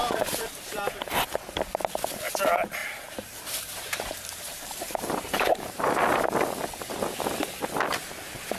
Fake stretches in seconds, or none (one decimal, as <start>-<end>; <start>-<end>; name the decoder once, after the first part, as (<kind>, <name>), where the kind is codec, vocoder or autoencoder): 0.0-1.2 (vocoder, BigVGAN v2); 2.8-5.9

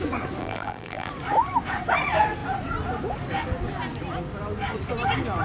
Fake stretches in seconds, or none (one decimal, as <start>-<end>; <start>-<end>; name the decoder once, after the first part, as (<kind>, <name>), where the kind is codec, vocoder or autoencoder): 0.4-1.1 (vocoder, BigVGAN v2)

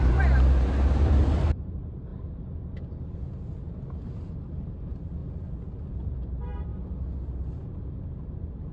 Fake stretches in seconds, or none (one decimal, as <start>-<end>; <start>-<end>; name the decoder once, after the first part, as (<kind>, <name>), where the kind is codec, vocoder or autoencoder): 0.0-2.1 (vocoder, BigVGAN v2); 4.7-5.2; 5.9-6.7; 8.0-8.7

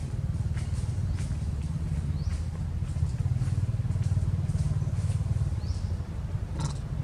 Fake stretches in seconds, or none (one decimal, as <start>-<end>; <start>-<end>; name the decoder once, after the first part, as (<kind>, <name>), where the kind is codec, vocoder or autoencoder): 2.3-6.5 (vocoder, BigVGAN v2)